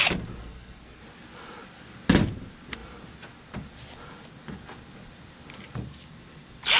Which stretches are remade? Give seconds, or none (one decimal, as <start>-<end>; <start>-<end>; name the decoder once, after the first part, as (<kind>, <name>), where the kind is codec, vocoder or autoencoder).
0.4-1.0 (codec, SNAC)